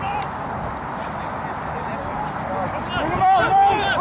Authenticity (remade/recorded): recorded